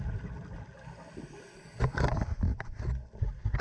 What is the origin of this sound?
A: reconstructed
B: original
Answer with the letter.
B